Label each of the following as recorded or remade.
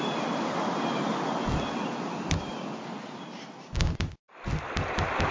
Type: recorded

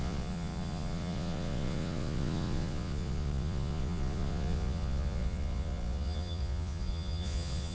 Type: remade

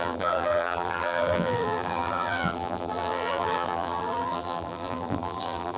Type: remade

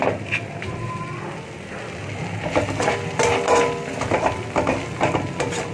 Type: recorded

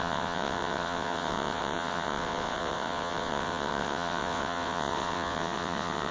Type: remade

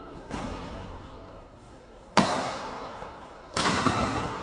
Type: remade